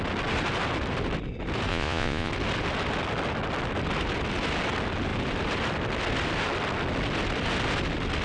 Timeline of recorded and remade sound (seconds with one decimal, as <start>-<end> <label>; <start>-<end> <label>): 0.0-1.7 recorded; 1.7-2.3 remade; 2.3-8.2 recorded